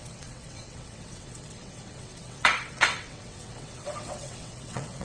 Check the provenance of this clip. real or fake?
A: fake